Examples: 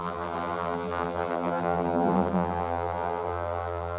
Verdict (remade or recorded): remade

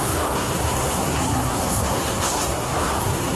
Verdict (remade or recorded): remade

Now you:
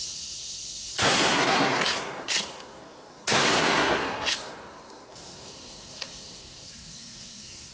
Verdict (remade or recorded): remade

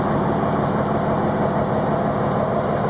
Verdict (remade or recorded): recorded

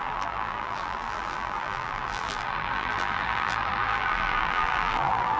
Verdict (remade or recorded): remade